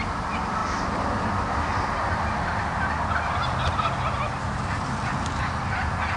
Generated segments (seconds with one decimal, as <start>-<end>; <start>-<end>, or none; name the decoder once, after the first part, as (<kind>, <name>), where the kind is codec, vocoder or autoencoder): none